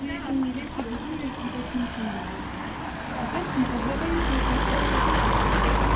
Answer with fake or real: real